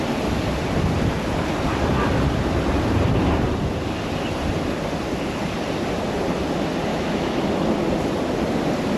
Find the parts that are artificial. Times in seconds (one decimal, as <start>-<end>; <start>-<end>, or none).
6.9-7.4